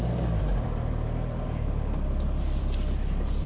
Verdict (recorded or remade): remade